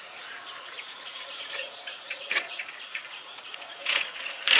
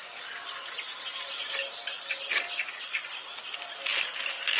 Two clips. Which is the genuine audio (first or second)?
second